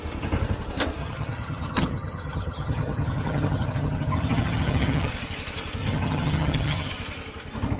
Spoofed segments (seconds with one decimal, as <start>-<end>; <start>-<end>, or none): 1.0-5.1; 5.8-6.9